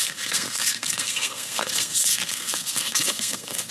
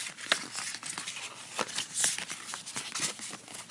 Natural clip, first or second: second